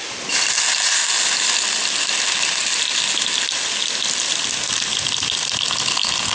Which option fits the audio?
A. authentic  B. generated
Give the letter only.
A